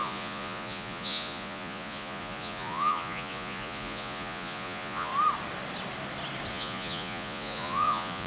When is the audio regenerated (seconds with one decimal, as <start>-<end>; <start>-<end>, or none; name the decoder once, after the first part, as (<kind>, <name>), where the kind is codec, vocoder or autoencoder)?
0.0-5.1 (vocoder, Vocos); 6.5-8.3